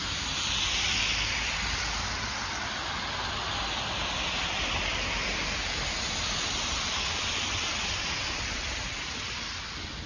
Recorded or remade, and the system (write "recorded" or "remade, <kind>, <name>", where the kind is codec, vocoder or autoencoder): recorded